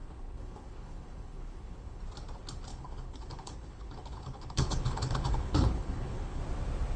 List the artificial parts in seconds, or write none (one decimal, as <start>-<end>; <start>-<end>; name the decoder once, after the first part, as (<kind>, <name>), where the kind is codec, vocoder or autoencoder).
0.0-2.0 (codec, HILCodec); 2.7-6.4